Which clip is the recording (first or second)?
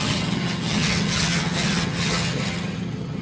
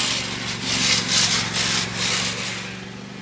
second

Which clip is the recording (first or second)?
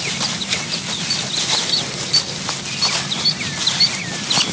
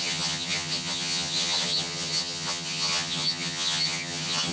first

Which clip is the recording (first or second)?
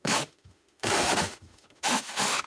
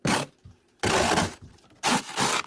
second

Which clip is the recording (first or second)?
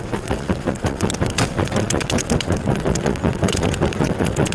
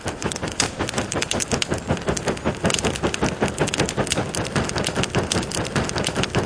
second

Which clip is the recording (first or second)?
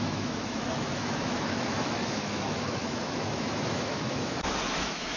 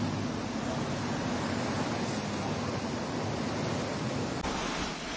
second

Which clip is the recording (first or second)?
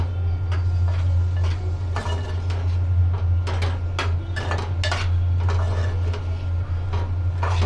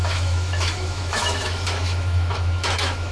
first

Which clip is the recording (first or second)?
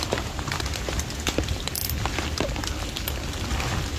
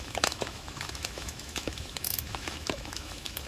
first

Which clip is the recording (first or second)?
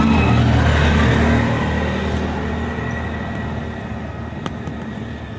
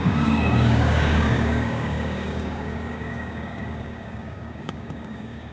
first